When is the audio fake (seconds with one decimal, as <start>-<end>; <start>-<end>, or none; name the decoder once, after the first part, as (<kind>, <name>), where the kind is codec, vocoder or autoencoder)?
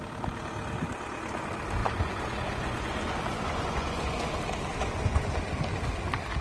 1.8-4.3 (vocoder, Vocos); 4.7-5.3